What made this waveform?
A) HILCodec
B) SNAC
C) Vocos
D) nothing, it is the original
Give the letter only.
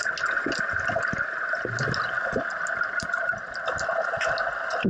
D